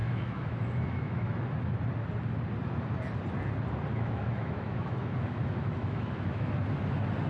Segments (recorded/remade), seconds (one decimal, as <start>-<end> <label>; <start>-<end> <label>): 0.0-1.3 remade; 1.3-3.9 recorded; 3.9-6.5 remade; 6.5-7.3 recorded